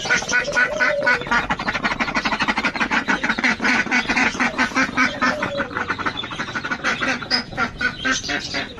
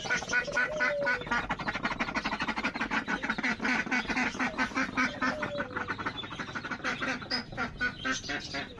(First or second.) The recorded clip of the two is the second